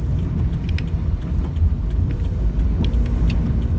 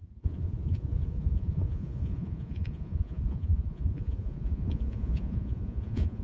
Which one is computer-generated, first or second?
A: second